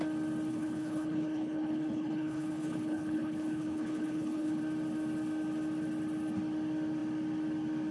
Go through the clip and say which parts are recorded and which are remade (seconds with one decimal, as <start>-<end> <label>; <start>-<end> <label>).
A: 0.0-0.5 recorded; 0.5-4.6 remade; 4.6-7.9 recorded